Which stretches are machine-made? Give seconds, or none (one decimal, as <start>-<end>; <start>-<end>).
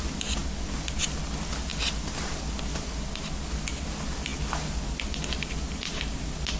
none